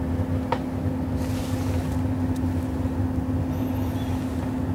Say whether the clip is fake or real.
real